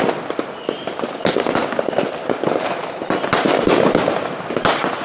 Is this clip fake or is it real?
real